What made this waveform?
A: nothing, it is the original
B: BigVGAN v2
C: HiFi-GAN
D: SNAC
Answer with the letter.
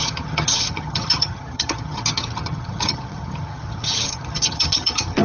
C